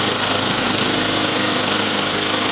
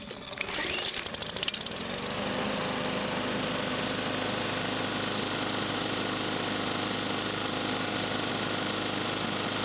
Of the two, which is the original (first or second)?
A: second